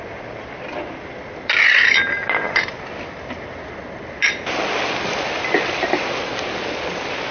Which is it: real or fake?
real